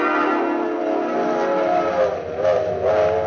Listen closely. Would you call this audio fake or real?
real